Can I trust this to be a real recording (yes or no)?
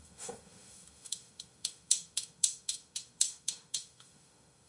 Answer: no